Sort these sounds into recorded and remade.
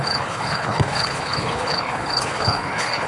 remade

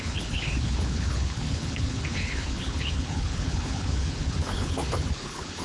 remade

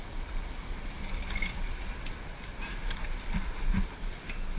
recorded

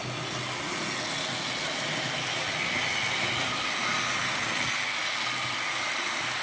recorded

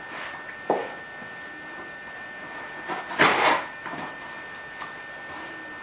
recorded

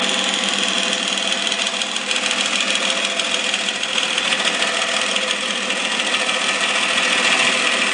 recorded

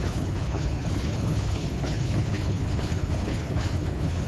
remade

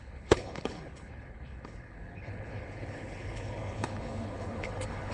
remade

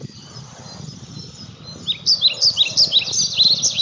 recorded